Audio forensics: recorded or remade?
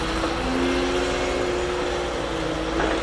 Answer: recorded